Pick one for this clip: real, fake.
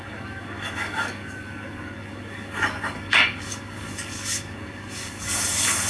fake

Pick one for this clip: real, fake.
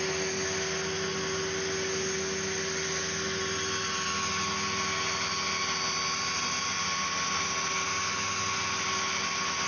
real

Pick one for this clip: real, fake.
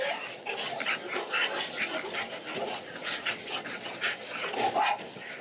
real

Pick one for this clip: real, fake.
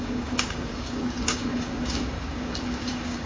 fake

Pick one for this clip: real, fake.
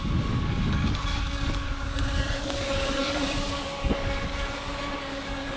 fake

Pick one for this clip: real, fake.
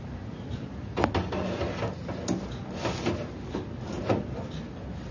real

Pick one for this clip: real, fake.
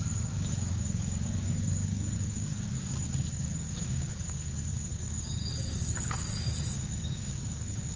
fake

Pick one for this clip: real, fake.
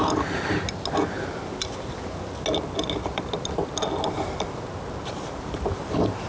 real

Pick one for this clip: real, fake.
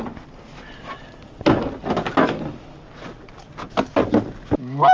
real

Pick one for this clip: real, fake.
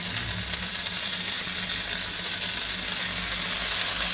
real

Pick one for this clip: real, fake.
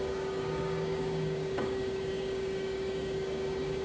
fake